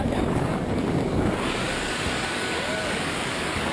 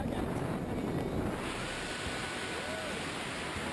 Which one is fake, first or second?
first